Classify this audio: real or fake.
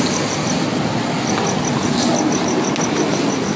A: real